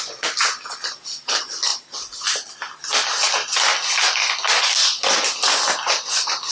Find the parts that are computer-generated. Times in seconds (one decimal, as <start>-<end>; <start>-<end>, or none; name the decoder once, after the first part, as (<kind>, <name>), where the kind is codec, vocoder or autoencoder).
none